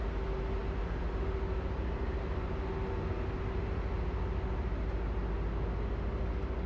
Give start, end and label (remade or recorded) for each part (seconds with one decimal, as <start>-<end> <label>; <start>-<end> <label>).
0.0-6.7 recorded